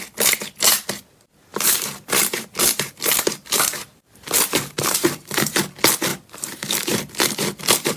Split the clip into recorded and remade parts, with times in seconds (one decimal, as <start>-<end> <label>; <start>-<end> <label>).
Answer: 0.0-1.5 recorded; 1.5-5.6 remade; 5.6-6.1 recorded; 6.1-6.7 remade; 6.7-8.0 recorded